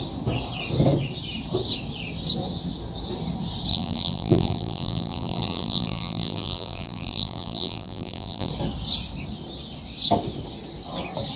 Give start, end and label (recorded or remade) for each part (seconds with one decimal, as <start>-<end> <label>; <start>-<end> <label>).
0.0-3.7 recorded; 3.7-8.5 remade; 8.5-11.4 recorded